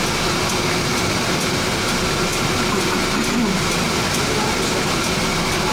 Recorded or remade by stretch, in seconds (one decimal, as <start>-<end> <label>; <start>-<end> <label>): 0.0-5.7 recorded